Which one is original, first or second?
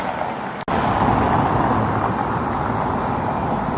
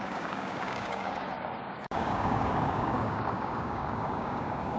first